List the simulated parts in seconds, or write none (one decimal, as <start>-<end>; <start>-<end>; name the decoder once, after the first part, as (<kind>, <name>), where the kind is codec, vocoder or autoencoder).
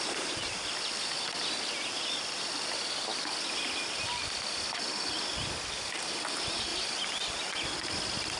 6.7-7.4 (vocoder, BigVGAN v2)